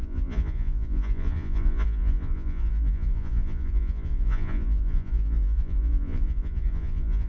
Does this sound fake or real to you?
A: fake